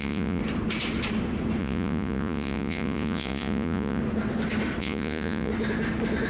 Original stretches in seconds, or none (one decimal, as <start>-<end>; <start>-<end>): 0.4-1.6; 4.0-4.8; 5.5-6.3